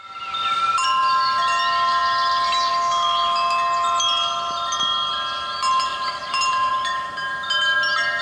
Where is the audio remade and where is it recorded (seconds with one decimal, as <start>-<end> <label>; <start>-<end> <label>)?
0.0-5.9 recorded; 5.9-6.7 remade; 6.7-8.2 recorded